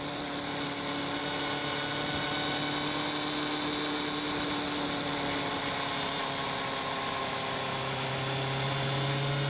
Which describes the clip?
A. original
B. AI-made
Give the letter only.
A